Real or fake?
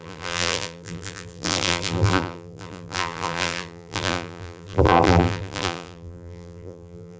fake